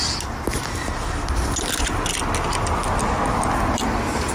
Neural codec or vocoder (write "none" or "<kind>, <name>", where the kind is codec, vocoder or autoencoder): none